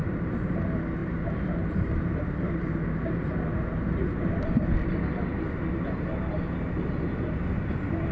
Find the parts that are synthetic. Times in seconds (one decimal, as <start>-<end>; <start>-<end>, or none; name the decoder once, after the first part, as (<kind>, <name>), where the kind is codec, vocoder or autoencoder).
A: 0.0-0.6 (vocoder, BigVGAN v2); 1.0-4.2; 5.3-7.4